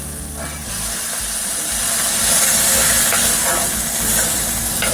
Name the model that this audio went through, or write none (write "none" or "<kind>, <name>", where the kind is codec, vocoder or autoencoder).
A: none